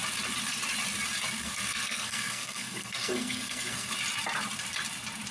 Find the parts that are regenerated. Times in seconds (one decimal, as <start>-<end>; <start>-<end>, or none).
1.4-3.9